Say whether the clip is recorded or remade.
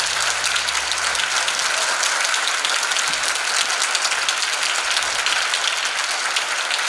recorded